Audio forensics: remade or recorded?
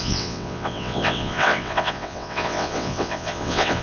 remade